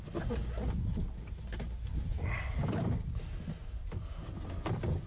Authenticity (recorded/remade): recorded